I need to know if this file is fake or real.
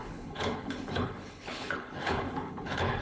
fake